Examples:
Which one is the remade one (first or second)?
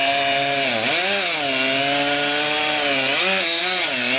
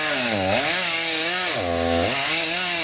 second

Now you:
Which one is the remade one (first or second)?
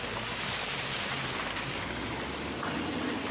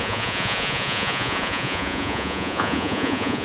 second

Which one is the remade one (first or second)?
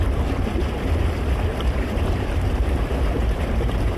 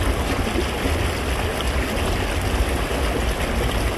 first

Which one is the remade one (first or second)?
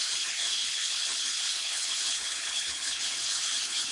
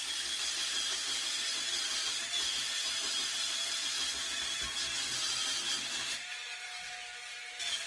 first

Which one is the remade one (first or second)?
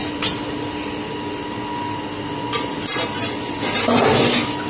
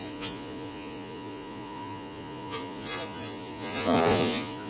second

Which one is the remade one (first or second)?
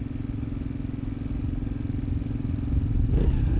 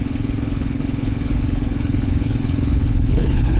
second